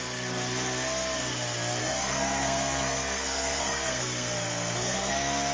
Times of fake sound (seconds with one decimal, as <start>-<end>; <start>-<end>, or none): 1.8-5.1